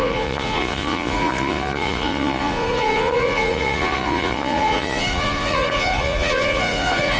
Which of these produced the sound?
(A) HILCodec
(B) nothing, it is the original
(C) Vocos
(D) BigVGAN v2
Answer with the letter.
C